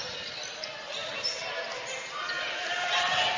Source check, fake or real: real